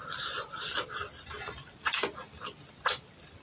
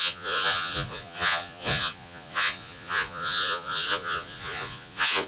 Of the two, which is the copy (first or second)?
second